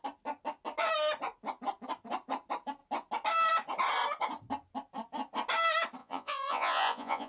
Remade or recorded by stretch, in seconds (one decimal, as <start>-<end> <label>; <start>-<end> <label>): 0.0-6.0 recorded; 6.0-7.3 remade